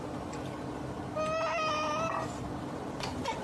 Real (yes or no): yes